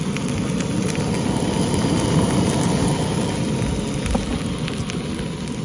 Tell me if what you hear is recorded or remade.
recorded